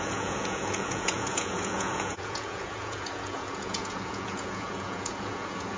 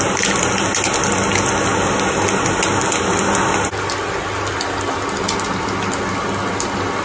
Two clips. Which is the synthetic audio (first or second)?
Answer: first